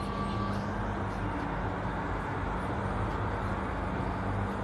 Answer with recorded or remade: recorded